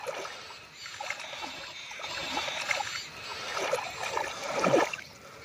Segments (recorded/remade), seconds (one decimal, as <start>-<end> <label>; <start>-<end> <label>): 0.0-5.4 recorded